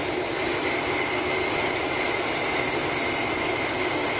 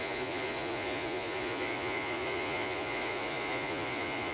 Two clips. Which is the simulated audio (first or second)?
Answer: second